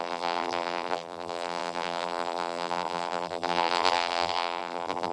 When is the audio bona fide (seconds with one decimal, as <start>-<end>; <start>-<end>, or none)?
none